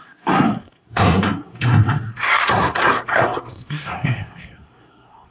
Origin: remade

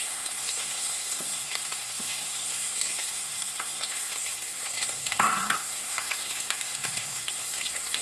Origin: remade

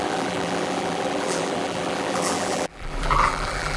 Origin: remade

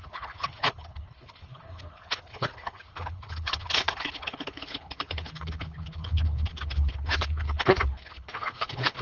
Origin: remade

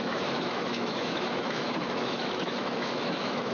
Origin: remade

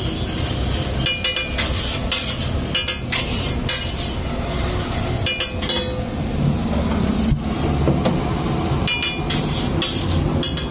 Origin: recorded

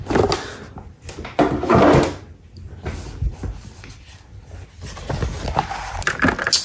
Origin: recorded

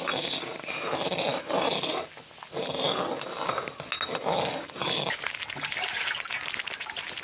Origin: recorded